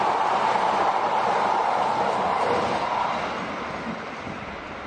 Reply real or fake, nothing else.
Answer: real